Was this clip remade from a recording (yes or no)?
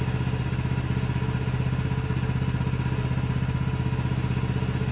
no